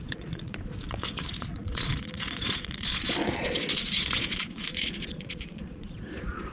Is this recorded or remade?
remade